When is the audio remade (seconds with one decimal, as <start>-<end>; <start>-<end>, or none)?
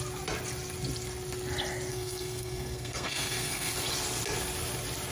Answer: 1.9-3.7